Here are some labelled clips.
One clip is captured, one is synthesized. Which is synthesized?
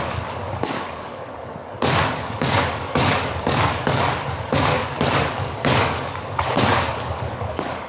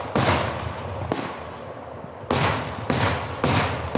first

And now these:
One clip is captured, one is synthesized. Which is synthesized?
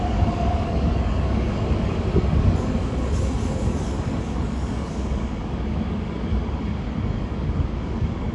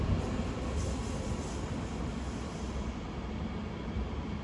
first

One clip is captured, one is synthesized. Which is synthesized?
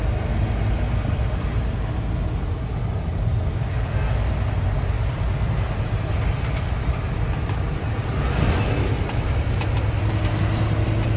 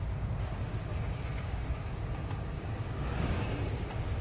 second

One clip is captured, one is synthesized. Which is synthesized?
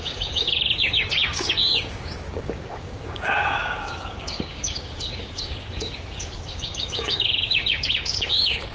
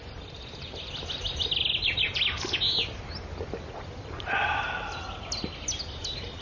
first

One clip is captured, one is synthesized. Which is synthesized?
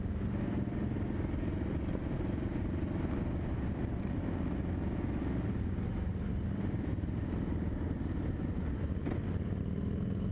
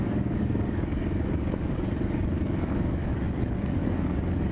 second